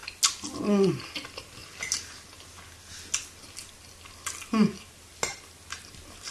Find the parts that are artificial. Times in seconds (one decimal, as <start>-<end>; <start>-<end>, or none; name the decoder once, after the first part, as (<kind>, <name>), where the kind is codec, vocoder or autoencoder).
none